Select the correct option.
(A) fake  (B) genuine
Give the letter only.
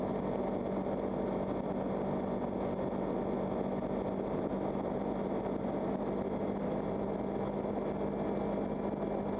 B